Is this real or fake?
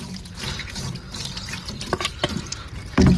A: fake